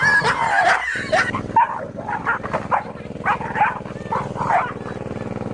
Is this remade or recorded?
recorded